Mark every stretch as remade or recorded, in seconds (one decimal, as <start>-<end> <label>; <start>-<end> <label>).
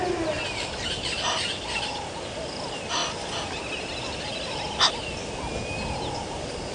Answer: 0.0-6.7 recorded